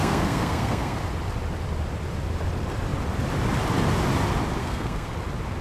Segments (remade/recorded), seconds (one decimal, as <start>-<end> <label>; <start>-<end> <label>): 0.0-1.0 remade; 1.0-4.6 recorded; 4.6-5.1 remade; 5.1-5.6 recorded